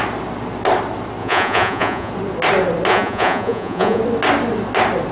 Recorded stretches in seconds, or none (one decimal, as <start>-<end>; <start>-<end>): 0.0-1.2; 2.1-2.9; 4.0-5.1